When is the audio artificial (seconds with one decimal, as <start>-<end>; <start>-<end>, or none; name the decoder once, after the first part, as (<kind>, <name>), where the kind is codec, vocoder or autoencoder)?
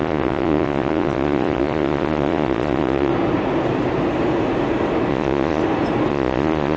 0.0-3.1 (vocoder, Vocos); 5.1-5.6; 6.1-6.8